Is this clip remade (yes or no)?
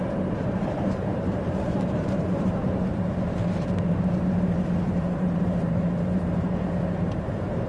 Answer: yes